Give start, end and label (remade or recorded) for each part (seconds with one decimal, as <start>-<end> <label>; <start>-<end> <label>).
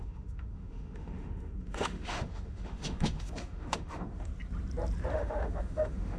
0.0-4.3 remade; 4.3-5.1 recorded; 5.1-6.2 remade